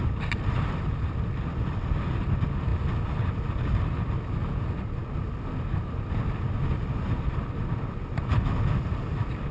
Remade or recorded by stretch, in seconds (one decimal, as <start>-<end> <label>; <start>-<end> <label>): 0.0-9.5 recorded